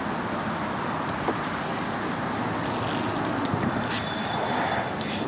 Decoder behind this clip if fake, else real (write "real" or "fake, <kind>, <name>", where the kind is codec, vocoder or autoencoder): real